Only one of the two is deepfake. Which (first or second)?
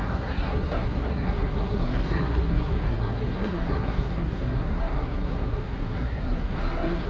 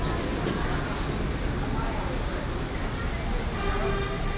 first